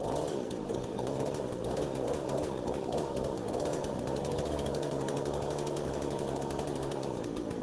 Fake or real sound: fake